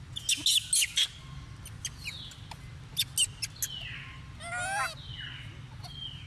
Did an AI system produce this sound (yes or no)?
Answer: no